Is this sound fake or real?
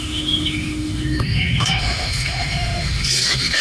fake